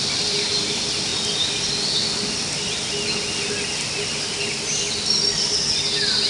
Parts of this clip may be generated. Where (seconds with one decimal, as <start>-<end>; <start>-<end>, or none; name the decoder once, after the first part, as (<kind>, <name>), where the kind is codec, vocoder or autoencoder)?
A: none